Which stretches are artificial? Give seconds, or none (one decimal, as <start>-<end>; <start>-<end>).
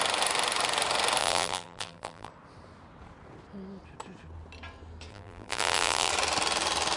1.2-2.3; 5.1-6.1